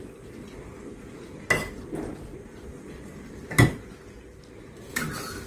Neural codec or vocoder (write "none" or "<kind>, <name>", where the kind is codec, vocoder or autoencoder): none